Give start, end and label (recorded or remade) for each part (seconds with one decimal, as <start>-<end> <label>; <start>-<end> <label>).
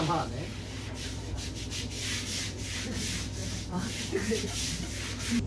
0.0-5.5 remade